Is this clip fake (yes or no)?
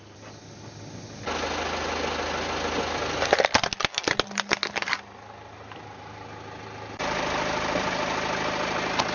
no